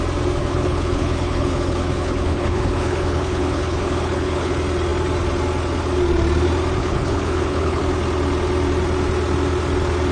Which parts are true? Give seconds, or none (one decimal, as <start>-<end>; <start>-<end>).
0.0-0.4; 4.5-6.8; 7.8-10.1